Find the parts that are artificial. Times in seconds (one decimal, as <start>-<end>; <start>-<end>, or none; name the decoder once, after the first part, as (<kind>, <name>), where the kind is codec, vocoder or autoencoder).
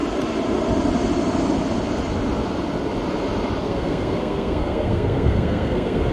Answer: 3.6-6.1 (codec, SNAC)